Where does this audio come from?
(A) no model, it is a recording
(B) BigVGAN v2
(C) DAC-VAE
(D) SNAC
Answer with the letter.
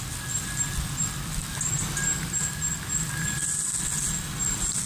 A